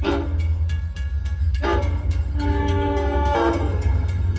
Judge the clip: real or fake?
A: fake